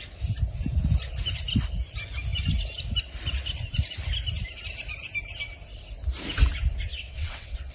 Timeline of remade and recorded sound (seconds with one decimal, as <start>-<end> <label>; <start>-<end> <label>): 0.0-6.9 recorded; 6.9-7.7 remade